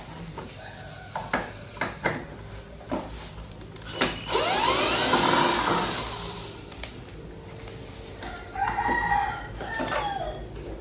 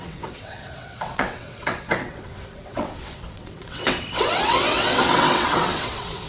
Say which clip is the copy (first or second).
second